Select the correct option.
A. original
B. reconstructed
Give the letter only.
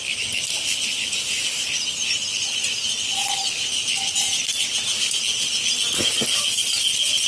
A